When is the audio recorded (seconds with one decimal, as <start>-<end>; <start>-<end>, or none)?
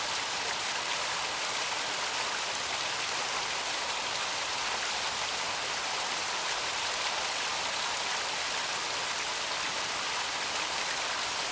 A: 0.0-11.5